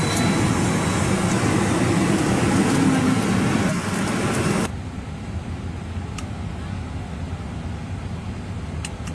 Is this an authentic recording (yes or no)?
yes